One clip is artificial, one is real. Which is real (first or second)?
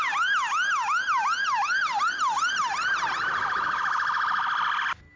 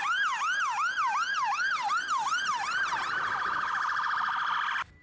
first